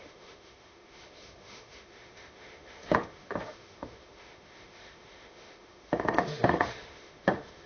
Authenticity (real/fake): fake